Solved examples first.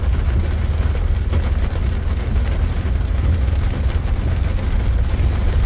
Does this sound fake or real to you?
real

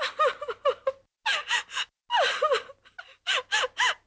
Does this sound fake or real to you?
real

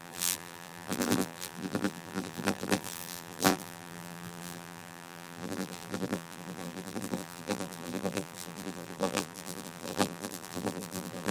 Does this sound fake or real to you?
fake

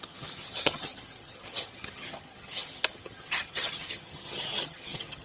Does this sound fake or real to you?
fake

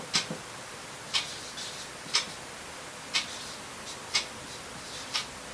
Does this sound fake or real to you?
real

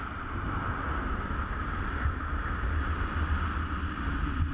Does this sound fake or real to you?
real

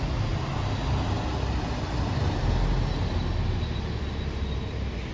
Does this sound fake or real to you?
real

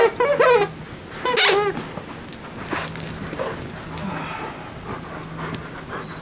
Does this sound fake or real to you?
real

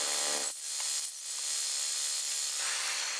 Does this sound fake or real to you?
real